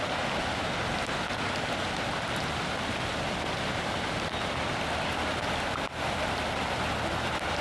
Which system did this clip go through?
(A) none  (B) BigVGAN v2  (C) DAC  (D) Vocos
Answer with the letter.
A